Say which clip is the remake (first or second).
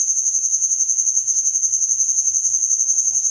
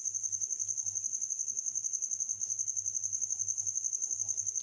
first